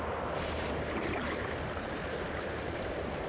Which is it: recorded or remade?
remade